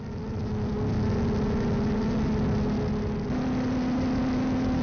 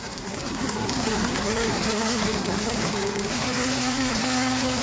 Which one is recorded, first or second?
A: first